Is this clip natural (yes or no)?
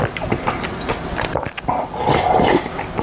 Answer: yes